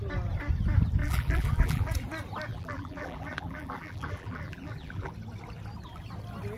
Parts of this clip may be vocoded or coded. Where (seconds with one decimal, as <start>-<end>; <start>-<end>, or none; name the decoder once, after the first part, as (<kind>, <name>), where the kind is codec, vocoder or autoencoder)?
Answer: 1.0-1.9 (vocoder, BigVGAN v2); 2.5-5.1